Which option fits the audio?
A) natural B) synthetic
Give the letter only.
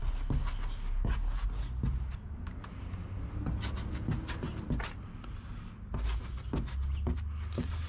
A